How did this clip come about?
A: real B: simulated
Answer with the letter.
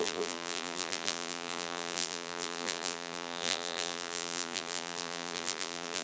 B